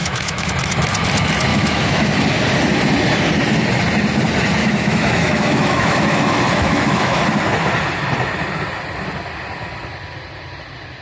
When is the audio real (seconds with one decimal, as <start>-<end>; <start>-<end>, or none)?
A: 0.5-1.5; 2.1-4.6; 7.2-11.0